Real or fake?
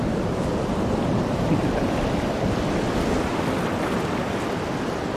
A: real